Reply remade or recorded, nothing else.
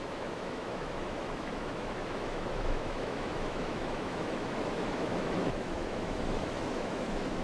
remade